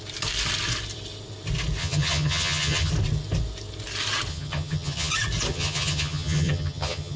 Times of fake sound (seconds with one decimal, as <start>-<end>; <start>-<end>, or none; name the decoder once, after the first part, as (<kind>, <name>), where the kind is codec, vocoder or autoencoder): 1.8-2.9 (vocoder, HiFi-GAN); 4.3-5.1; 5.5-7.2